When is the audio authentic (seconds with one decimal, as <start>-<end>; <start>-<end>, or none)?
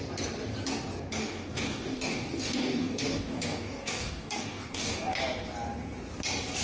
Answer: 0.0-1.2; 5.2-6.6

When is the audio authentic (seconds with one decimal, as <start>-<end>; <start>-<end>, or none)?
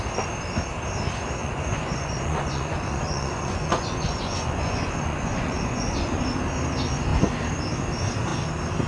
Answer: 0.0-1.4; 6.3-8.9